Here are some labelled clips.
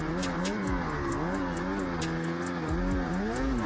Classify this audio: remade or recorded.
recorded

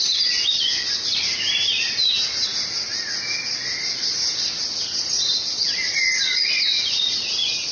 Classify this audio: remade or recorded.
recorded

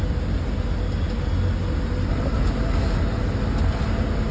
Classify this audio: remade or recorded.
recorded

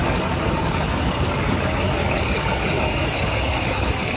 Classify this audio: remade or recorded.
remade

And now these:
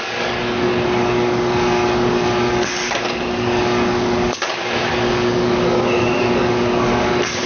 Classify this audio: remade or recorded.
remade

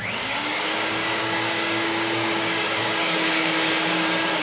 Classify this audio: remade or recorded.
remade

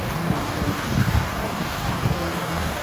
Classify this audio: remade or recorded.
remade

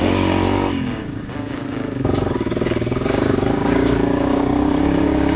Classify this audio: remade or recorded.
remade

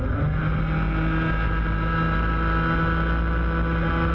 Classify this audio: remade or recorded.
recorded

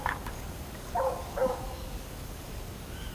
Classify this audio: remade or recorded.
remade